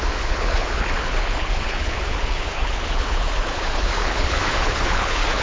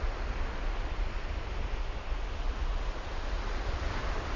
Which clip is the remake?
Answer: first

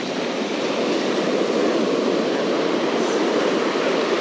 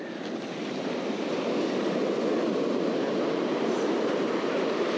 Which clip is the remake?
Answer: first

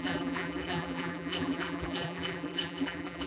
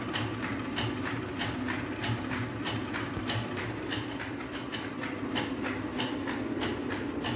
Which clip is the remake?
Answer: first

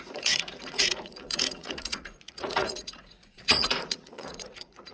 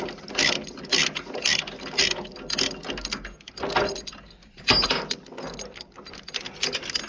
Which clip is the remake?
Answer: first